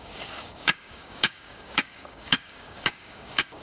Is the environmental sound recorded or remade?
remade